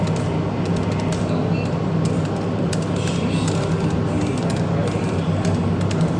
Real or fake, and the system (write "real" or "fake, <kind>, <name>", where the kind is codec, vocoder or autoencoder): real